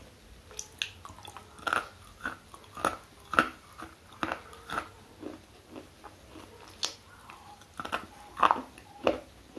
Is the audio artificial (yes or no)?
no